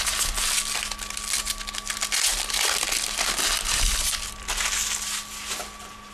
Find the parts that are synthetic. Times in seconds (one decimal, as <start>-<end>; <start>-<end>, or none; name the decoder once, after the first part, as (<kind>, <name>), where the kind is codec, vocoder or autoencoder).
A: none